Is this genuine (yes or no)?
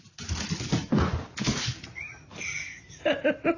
yes